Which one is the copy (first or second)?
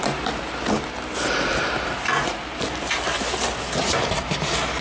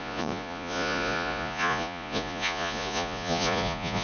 second